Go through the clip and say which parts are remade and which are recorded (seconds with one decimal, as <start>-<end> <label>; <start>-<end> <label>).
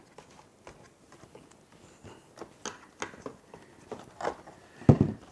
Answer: 0.0-5.3 recorded